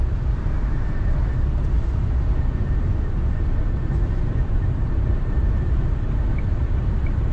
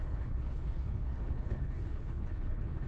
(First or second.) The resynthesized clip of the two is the second